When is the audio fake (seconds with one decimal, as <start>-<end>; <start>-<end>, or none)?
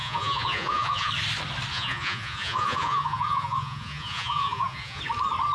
0.0-1.1; 1.7-5.0